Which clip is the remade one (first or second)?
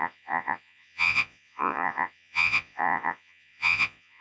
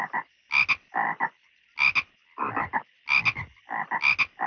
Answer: first